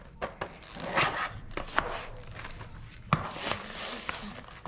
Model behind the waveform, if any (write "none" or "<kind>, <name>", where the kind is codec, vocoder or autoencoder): none